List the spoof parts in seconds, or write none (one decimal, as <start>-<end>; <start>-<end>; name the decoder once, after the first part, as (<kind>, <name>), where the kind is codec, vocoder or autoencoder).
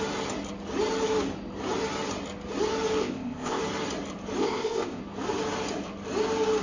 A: 3.0-3.6 (codec, ZipCodec); 4.4-5.0